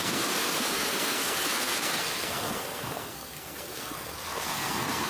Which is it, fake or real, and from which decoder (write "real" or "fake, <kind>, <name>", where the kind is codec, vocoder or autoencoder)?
fake, codec, SNAC